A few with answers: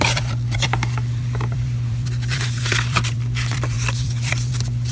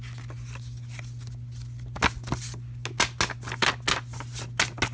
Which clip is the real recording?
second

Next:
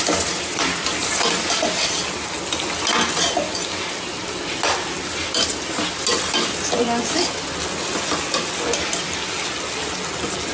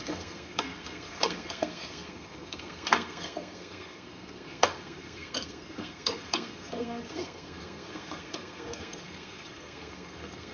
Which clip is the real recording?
first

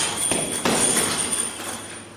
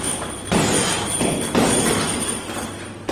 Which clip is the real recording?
first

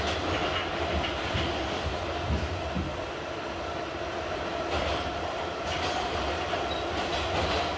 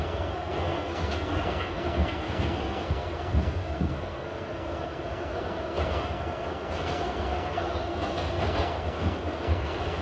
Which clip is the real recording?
first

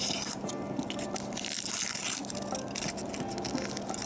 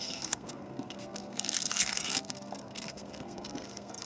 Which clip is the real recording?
first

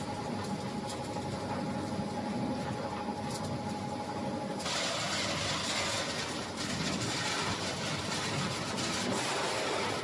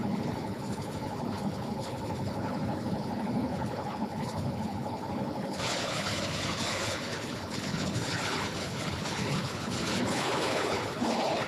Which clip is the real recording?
first